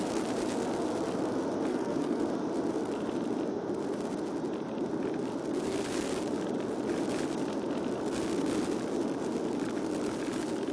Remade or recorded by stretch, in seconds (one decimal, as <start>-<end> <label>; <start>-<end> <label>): 0.0-1.7 recorded; 1.7-2.2 remade; 2.2-10.7 recorded